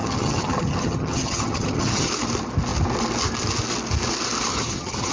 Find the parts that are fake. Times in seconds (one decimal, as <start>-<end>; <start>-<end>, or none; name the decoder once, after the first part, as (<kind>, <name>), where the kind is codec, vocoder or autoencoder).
0.0-2.1 (vocoder, HiFi-GAN); 4.5-5.1